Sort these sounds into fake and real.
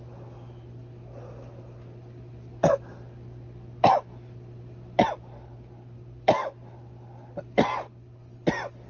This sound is real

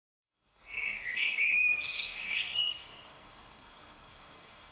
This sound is fake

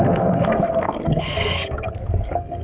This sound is fake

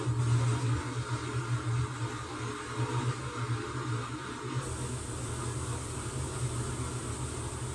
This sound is real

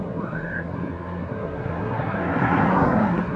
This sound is fake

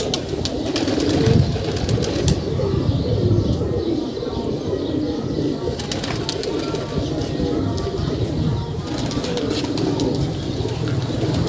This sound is real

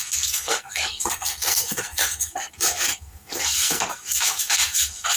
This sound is fake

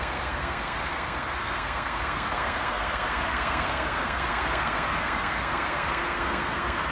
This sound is fake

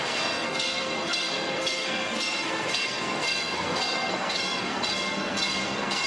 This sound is fake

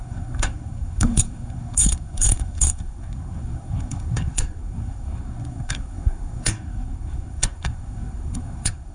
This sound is fake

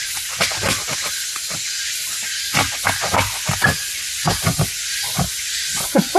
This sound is real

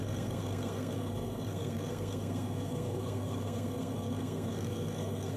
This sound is fake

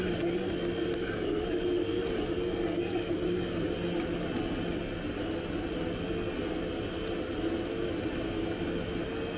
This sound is real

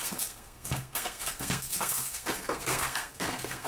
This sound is fake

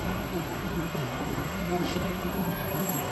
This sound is fake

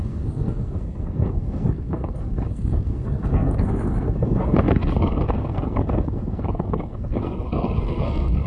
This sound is fake